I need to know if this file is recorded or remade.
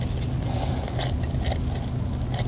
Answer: recorded